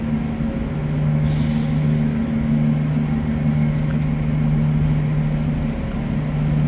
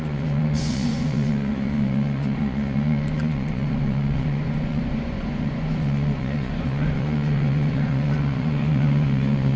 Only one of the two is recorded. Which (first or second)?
first